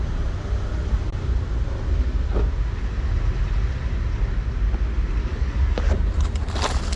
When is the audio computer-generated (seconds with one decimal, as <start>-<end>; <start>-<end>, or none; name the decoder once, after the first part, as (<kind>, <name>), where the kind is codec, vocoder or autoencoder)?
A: 5.2-5.8 (codec, DAC)